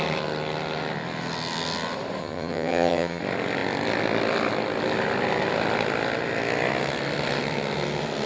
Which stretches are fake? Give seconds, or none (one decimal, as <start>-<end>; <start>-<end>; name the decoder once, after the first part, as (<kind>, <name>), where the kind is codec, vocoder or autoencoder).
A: 2.2-3.2 (vocoder, HiFi-GAN)